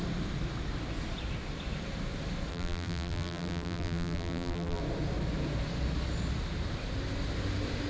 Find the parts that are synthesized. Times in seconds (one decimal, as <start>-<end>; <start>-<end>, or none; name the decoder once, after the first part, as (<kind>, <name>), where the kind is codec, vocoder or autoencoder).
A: 2.5-4.8 (vocoder, BigVGAN v2)